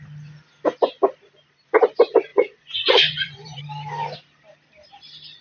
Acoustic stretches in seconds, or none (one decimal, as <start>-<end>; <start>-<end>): 0.0-2.3; 3.6-5.4